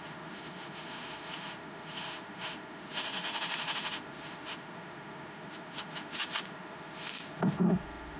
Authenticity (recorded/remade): remade